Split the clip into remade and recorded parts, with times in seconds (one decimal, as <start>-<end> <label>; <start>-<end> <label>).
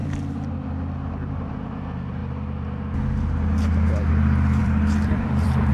0.0-4.6 recorded; 4.6-5.7 remade